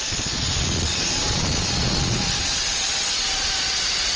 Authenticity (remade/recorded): remade